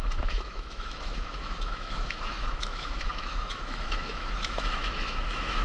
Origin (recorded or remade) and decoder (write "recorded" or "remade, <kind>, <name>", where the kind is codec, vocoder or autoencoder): remade, autoencoder, DAC-VAE